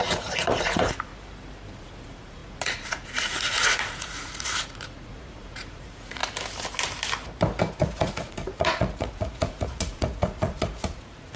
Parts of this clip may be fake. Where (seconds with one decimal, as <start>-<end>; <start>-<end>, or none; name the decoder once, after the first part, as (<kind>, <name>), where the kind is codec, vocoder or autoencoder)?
0.0-1.1 (vocoder, Vocos); 1.7-6.2; 7.8-11.4